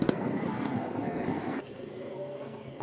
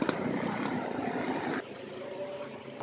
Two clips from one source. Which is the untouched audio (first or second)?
second